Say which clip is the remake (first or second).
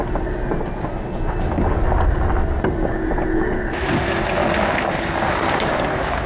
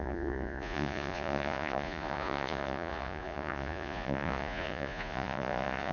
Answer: second